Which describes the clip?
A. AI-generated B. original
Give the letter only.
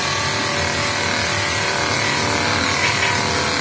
B